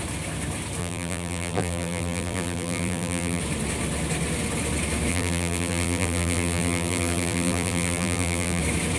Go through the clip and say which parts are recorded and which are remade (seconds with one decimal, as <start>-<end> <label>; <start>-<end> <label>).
0.0-0.8 recorded; 0.8-3.4 remade; 3.4-5.1 recorded; 5.1-8.6 remade; 8.6-9.0 recorded